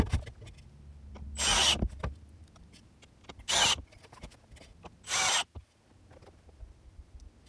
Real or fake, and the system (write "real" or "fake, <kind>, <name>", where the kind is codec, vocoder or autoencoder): real